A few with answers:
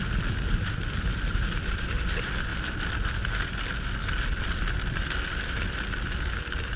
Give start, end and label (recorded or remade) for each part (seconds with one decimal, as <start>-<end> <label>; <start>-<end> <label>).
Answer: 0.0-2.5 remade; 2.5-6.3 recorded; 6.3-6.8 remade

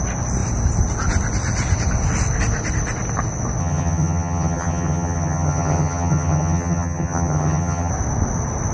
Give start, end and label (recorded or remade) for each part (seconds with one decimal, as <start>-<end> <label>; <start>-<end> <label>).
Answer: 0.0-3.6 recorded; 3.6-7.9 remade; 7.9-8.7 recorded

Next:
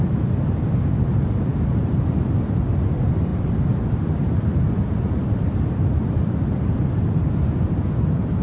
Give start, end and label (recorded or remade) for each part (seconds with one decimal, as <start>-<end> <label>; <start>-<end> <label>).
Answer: 0.0-3.3 recorded; 3.3-7.0 remade; 7.0-8.4 recorded

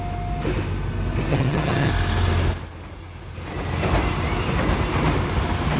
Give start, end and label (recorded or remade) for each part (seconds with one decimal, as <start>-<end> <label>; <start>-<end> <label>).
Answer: 0.0-1.3 recorded; 1.3-1.9 remade; 1.9-5.8 recorded

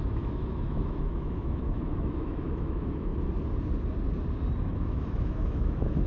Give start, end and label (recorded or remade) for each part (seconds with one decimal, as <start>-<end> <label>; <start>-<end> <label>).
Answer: 0.0-3.1 remade; 3.1-4.6 recorded; 4.6-6.1 remade